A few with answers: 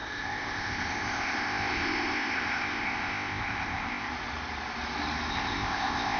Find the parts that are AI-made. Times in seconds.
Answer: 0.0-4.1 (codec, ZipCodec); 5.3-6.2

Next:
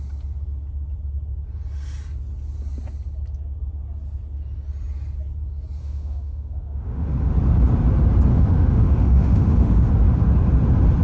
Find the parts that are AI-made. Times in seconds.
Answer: 5.8-7.1 (autoencoder, DAC-VAE); 8.3-9.9